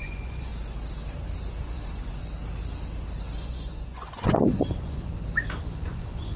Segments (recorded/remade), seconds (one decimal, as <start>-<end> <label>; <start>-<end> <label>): 0.0-0.5 remade; 0.5-1.6 recorded; 1.6-2.2 remade; 2.2-3.4 recorded; 3.4-5.1 remade; 5.1-5.6 recorded; 5.6-6.4 remade